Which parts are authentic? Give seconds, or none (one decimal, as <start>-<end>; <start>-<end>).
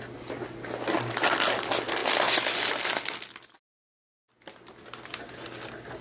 0.0-6.0